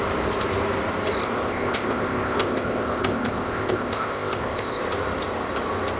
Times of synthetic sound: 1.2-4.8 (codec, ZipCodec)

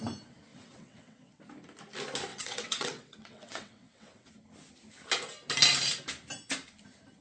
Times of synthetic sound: 0.5-1.4 (vocoder, WaveNeXt); 2.3-4.3

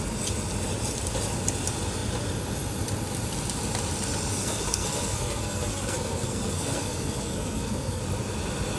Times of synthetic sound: 4.3-8.0 (codec, SNAC)

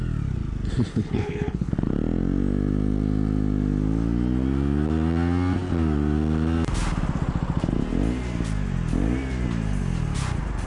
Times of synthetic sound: 0.9-1.7 (codec, HILCodec)

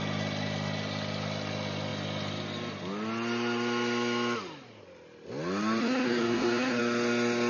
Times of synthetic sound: 5.8-6.8 (codec, SNAC)